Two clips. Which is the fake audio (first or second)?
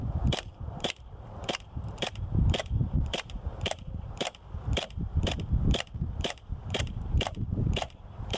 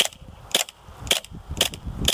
first